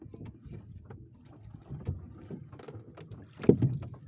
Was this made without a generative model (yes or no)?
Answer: yes